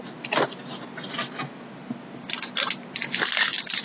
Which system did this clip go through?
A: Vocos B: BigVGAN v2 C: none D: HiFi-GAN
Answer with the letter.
C